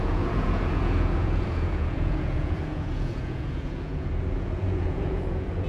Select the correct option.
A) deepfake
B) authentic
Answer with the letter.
A